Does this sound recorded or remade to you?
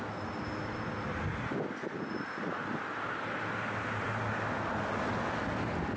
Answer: recorded